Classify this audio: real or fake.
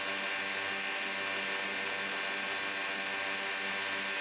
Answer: real